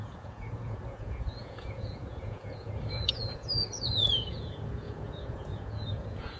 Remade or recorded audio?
remade